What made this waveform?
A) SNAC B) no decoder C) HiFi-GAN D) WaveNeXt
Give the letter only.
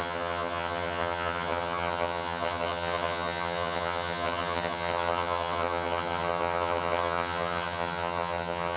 C